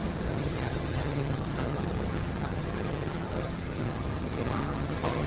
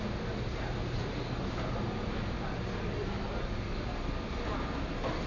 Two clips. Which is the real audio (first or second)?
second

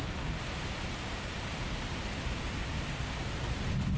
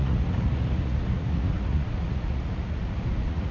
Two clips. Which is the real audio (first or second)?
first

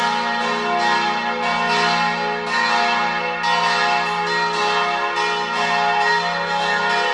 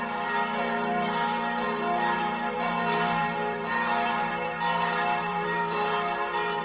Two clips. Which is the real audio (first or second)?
first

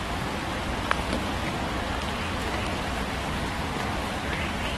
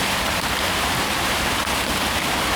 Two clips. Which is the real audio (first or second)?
first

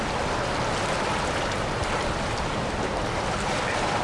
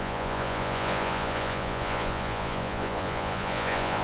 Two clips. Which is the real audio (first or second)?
first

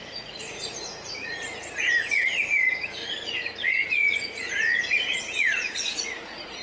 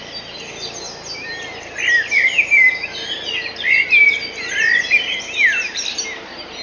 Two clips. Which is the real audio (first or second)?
second